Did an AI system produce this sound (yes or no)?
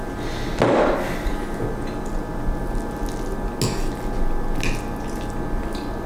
no